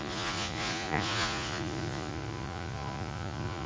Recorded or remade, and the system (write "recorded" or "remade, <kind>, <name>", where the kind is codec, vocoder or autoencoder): remade, vocoder, Vocos